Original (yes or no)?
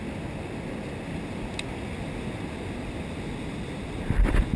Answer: yes